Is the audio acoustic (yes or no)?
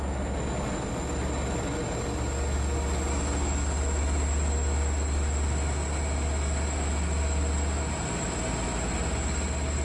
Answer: yes